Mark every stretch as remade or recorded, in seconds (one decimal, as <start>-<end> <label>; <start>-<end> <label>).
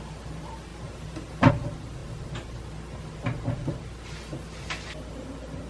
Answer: 0.0-5.7 recorded